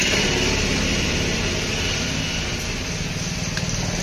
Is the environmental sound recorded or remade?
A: recorded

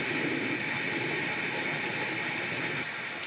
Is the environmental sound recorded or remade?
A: recorded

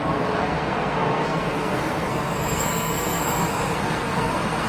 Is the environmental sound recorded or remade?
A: remade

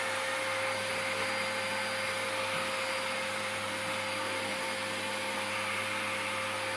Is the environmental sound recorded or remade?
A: recorded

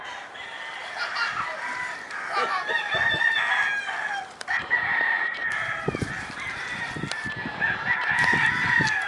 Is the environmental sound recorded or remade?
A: recorded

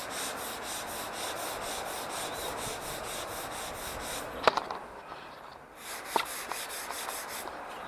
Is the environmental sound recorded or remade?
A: recorded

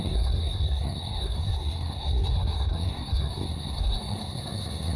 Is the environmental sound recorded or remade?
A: remade